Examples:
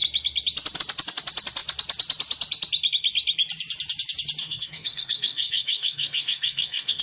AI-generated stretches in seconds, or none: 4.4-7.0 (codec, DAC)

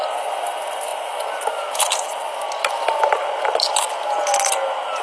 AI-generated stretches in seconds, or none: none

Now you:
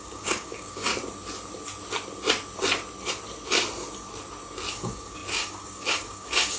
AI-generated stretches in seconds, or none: 0.0-0.9 (codec, DAC); 4.7-6.6

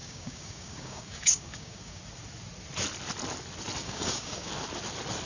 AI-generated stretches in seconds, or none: 0.0-2.0 (codec, DAC); 3.8-4.5

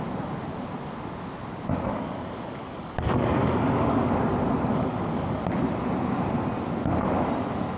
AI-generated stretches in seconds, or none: 1.9-4.1 (codec, DAC); 4.7-5.4

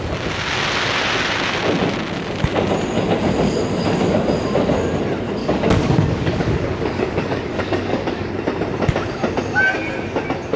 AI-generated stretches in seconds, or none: 5.4-8.3 (codec, DAC)

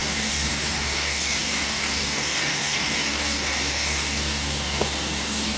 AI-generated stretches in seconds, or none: 0.0-5.6 (codec, DAC)